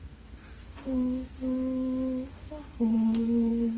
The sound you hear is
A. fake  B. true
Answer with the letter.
A